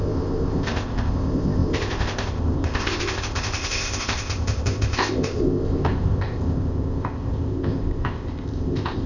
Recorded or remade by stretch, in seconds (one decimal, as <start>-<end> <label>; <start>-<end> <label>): 0.0-9.1 remade